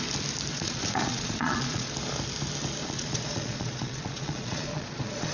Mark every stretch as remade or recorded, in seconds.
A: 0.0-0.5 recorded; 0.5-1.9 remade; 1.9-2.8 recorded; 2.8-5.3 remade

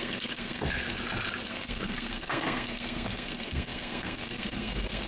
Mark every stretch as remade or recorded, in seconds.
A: 0.0-0.8 remade; 0.8-1.5 recorded; 1.5-5.1 remade